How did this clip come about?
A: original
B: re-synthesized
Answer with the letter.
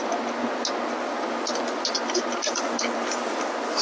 A